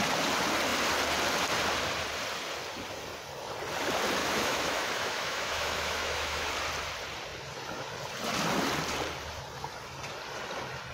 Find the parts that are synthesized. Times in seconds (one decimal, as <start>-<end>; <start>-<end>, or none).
4.2-6.5